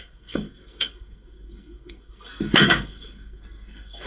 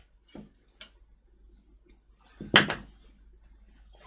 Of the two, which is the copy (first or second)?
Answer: first